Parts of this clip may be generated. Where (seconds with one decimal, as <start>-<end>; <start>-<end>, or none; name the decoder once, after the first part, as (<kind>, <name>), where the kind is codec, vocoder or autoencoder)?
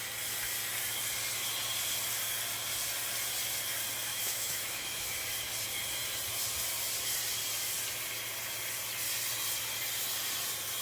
4.1-5.1 (autoencoder, DAC-VAE)